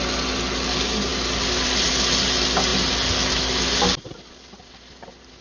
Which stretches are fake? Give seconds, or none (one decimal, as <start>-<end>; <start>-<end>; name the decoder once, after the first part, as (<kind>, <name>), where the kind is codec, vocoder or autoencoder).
1.1-1.9 (vocoder, BigVGAN v2)